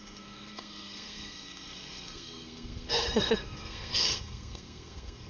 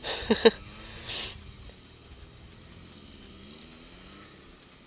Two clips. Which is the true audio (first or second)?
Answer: second